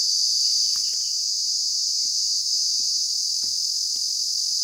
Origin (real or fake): real